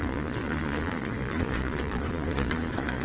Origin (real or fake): fake